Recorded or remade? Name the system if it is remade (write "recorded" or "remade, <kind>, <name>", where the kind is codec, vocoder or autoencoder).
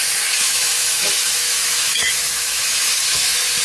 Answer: remade, autoencoder, DAC-VAE